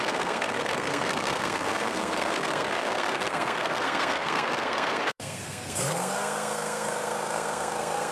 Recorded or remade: remade